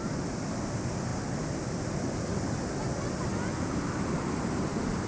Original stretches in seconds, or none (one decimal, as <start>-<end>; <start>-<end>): 0.0-5.1